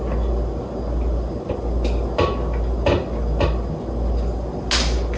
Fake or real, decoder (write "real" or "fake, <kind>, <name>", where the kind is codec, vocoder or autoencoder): real